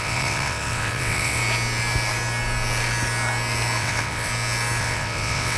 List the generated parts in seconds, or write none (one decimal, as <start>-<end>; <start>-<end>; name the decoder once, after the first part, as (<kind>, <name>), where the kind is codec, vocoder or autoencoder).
0.0-1.4 (vocoder, WaveNeXt); 3.8-4.3; 4.8-5.6